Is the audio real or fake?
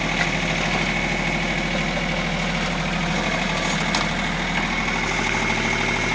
real